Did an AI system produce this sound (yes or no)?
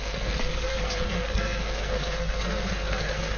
yes